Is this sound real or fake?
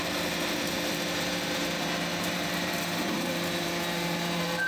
fake